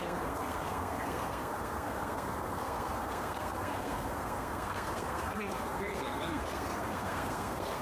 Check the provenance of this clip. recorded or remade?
remade